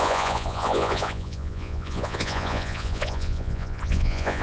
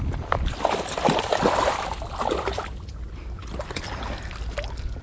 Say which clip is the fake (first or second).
first